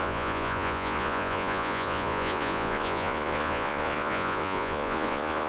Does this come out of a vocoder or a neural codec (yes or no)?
yes